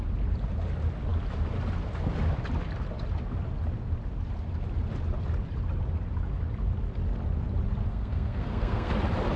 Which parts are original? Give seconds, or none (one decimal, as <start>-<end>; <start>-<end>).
0.0-7.9; 8.9-9.4